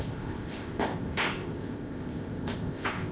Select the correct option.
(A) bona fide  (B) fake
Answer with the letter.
B